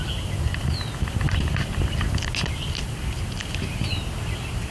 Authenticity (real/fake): real